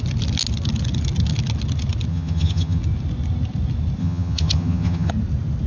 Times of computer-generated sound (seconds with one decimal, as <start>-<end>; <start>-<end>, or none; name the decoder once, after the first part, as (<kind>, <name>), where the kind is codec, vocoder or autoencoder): 2.1-2.8 (vocoder, HiFi-GAN); 4.0-5.1